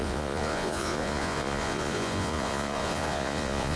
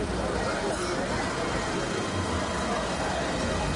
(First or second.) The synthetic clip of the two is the first